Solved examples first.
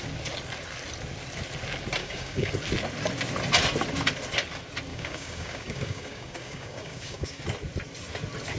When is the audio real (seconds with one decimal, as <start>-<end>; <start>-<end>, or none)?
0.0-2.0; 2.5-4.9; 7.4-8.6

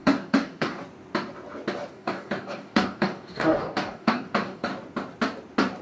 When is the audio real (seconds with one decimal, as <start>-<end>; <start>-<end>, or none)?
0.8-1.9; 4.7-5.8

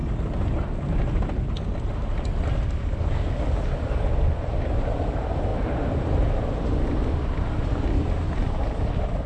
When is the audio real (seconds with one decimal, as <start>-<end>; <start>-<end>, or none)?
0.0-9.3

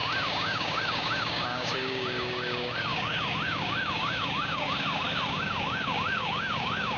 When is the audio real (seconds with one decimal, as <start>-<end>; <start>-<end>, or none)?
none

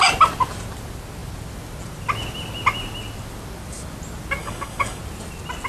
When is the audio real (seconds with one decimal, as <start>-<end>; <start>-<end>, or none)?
0.0-4.4; 5.0-5.7

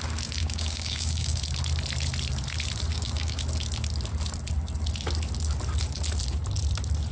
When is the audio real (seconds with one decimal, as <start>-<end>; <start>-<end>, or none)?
0.0-0.4; 1.4-2.9; 3.4-7.1